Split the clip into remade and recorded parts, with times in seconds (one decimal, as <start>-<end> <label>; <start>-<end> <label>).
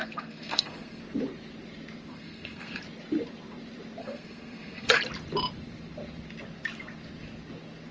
0.0-1.0 remade; 1.0-2.1 recorded; 2.1-2.8 remade; 2.8-4.0 recorded; 4.0-5.0 remade; 5.0-7.9 recorded